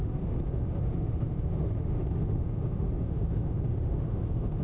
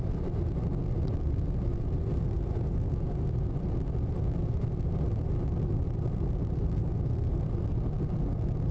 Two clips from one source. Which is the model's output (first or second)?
first